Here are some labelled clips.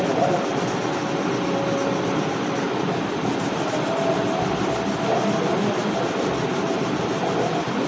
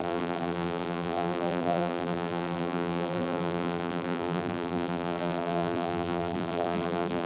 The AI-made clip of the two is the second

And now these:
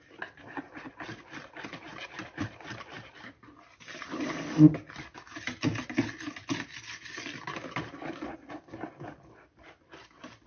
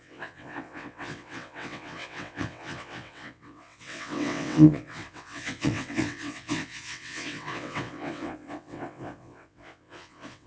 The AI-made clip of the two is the second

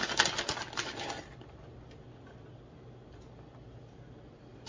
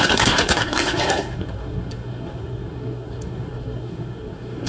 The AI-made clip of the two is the second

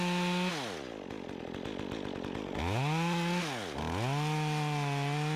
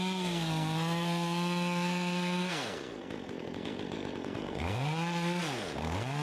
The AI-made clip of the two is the second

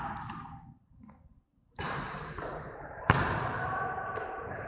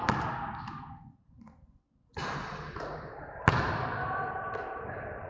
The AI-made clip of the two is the first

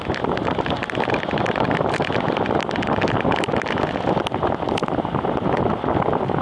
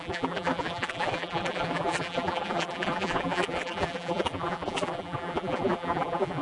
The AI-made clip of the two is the second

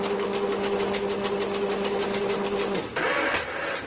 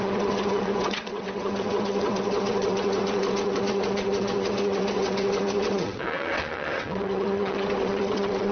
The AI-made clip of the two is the second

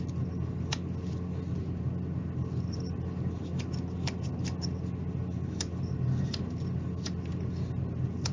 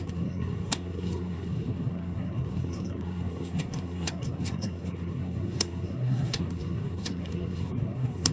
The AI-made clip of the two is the second